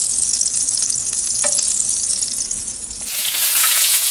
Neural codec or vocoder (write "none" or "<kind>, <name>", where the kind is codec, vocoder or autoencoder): vocoder, Vocos